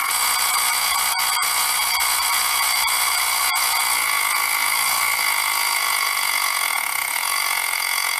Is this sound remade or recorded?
remade